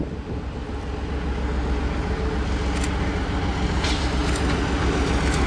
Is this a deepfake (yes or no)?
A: no